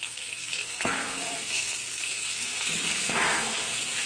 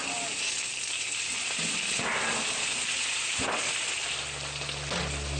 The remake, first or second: first